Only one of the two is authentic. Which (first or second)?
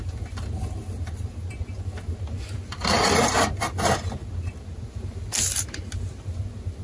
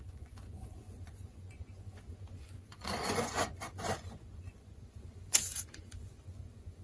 first